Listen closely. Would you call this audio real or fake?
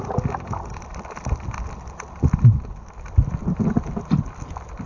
real